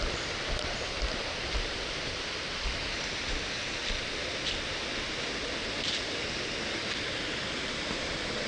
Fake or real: real